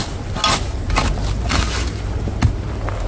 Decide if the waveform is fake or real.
real